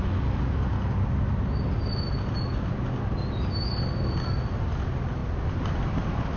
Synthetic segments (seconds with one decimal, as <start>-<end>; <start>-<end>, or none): none